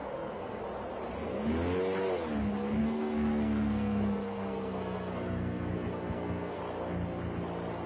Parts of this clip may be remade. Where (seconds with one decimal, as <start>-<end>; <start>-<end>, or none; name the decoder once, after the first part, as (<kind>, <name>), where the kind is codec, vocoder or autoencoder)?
0.0-0.6 (codec, SNAC); 2.8-6.6